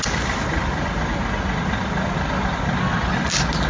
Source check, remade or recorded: recorded